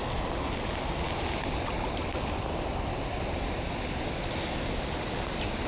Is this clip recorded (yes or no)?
yes